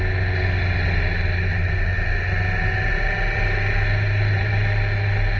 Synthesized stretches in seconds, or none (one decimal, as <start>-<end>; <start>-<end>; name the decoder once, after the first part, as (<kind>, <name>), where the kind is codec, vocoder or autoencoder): none